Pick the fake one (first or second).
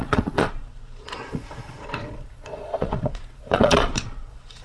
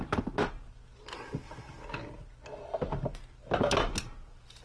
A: first